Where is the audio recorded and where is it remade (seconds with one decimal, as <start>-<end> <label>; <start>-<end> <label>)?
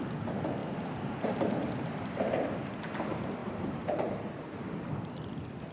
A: 0.0-0.6 recorded; 0.6-2.5 remade; 2.5-3.4 recorded; 3.4-4.9 remade; 4.9-5.7 recorded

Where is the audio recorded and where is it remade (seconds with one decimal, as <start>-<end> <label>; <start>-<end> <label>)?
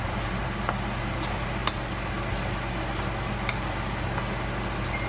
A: 0.0-0.7 remade; 0.7-5.1 recorded